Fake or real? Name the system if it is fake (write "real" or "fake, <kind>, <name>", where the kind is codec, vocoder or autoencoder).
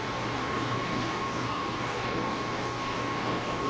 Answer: fake, codec, DAC